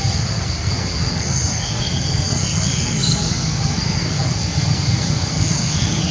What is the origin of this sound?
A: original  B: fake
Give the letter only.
B